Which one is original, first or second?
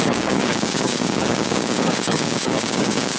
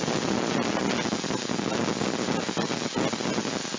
second